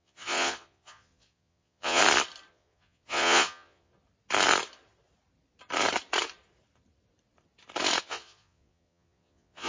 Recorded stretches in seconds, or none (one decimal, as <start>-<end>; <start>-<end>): 2.0-2.5; 3.9-8.0